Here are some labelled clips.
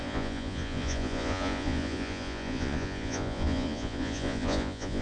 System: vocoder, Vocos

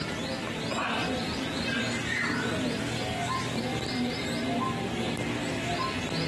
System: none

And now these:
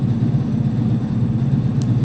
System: none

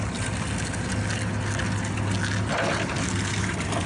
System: none